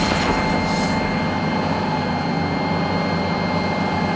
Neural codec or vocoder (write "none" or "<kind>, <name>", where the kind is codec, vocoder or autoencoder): none